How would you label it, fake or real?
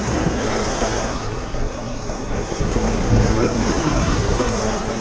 fake